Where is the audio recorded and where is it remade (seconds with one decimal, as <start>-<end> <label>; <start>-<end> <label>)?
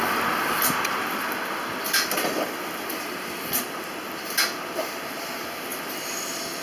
0.0-6.6 recorded